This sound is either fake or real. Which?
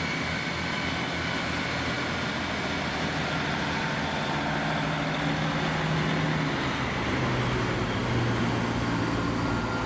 real